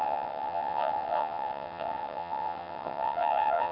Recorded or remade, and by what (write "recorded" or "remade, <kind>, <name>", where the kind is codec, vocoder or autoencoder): remade, vocoder, WaveNeXt